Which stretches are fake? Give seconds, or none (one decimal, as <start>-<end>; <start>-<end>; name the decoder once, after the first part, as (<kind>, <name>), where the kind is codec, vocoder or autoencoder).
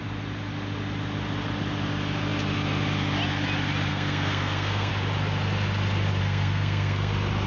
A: 3.9-4.9 (codec, SNAC); 6.2-7.1